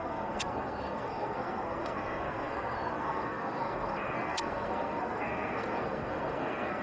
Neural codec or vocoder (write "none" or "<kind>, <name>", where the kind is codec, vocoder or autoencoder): codec, SNAC